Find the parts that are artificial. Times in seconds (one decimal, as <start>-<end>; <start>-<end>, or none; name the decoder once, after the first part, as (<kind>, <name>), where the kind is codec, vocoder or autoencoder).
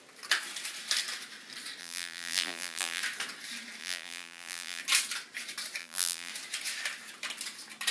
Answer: 1.8-3.0 (vocoder, BigVGAN v2); 3.8-4.8; 5.8-6.3